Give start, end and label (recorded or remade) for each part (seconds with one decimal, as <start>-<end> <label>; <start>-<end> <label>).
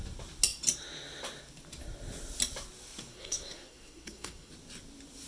0.0-3.1 recorded; 3.1-4.5 remade; 4.5-5.3 recorded